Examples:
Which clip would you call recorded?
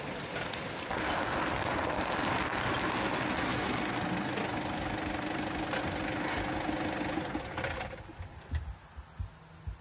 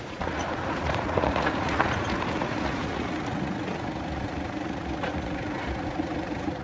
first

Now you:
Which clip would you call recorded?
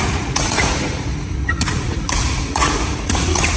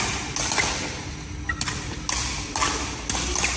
second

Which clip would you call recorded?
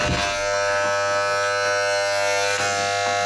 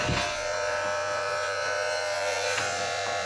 first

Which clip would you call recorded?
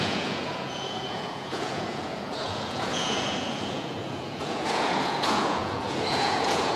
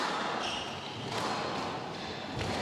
second